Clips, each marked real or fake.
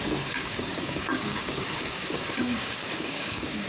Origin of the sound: fake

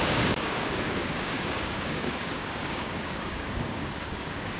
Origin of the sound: fake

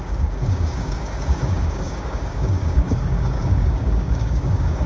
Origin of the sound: fake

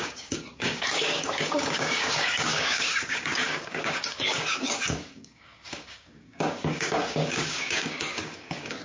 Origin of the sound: fake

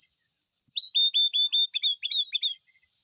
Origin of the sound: real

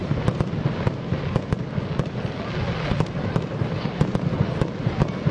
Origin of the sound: real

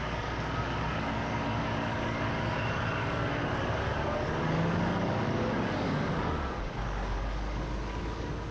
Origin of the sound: fake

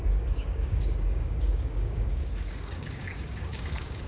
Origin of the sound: fake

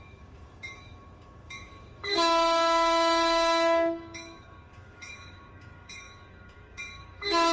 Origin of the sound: fake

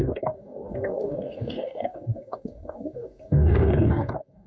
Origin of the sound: fake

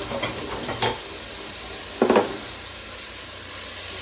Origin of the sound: real